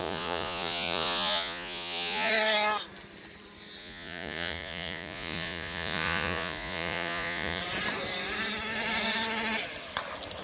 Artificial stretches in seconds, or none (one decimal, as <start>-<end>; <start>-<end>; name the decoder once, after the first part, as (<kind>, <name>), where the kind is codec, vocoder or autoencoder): 0.0-2.3 (vocoder, Vocos); 3.8-7.6